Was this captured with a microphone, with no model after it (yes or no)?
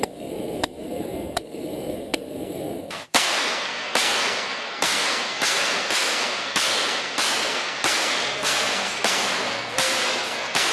no